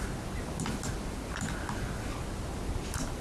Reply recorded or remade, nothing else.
recorded